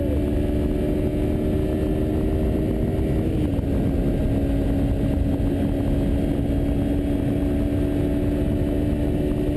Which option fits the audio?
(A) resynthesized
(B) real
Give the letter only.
B